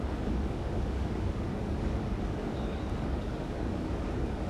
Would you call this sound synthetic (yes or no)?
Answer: yes